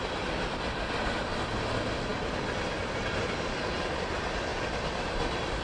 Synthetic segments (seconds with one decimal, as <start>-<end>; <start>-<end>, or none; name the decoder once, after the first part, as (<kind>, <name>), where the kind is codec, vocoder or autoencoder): none